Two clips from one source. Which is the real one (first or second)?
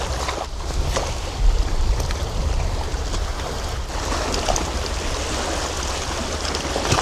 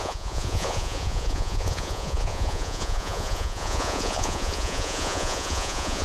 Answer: first